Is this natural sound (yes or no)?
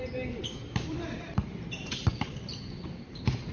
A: no